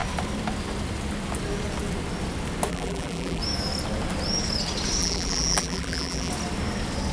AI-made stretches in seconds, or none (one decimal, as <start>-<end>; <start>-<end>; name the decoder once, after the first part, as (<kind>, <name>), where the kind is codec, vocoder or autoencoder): 2.7-3.4 (vocoder, BigVGAN v2); 5.0-6.3